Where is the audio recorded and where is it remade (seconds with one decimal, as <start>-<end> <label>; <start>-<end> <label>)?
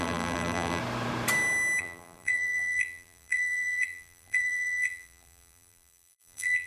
0.0-0.8 remade; 0.8-1.8 recorded; 1.8-6.7 remade